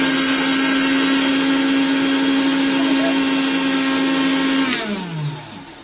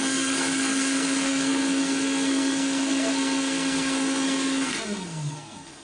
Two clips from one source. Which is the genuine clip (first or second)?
first